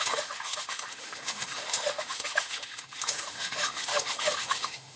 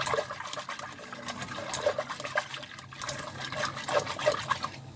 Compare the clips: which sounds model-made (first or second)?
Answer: first